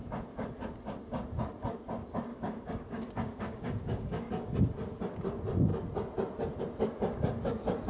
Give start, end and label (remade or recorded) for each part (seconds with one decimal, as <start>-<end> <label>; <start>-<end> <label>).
0.0-2.3 recorded; 2.3-4.3 remade; 4.3-7.9 recorded